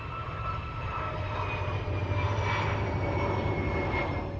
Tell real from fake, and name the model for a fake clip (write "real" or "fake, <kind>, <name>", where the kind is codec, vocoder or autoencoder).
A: real